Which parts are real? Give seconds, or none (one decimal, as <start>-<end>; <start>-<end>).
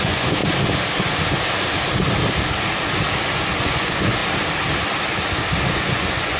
0.4-3.6; 4.2-5.7